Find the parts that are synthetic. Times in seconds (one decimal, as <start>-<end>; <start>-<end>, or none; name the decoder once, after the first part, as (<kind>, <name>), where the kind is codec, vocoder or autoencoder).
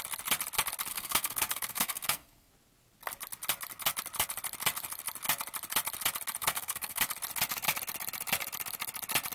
0.9-2.5 (codec, SNAC); 6.4-7.0